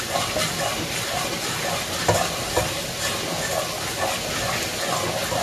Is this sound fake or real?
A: real